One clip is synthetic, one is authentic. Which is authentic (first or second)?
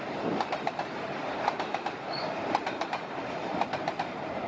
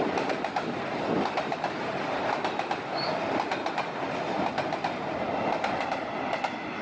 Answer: second